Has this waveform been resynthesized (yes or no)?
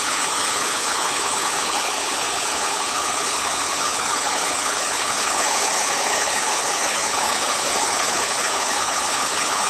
yes